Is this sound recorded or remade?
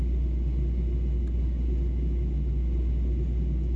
recorded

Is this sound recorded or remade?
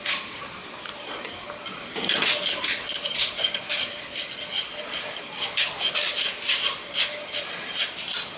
remade